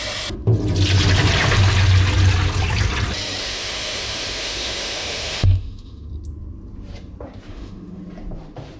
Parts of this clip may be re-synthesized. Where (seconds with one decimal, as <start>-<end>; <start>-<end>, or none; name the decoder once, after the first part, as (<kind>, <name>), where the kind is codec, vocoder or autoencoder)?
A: 3.4-6.1 (autoencoder, DAC-VAE); 7.5-8.0